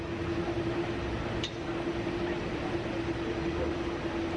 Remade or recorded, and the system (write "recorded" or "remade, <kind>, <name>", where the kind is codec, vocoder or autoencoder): recorded